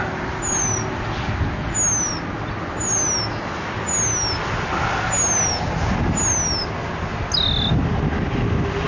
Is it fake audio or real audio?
real